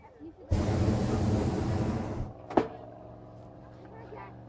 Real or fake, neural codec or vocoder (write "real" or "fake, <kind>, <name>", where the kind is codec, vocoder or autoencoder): real